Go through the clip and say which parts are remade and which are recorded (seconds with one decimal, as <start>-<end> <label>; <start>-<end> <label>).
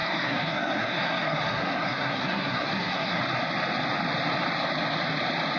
0.0-3.2 remade; 3.2-5.6 recorded